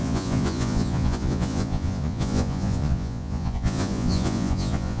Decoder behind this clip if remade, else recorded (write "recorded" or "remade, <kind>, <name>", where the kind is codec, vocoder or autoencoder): remade, vocoder, Vocos